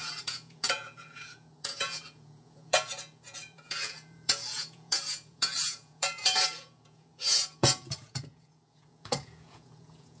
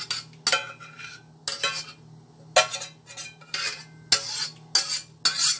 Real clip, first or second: second